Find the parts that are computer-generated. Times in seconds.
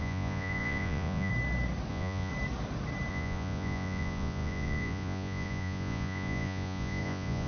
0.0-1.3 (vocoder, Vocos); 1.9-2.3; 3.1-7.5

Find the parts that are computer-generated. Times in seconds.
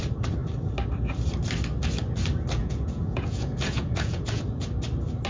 2.6-4.4 (vocoder, Vocos)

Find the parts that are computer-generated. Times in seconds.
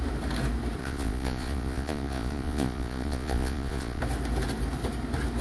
0.8-4.0 (vocoder, Vocos)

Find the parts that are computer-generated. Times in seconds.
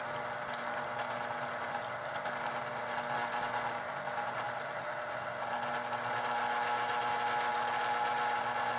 none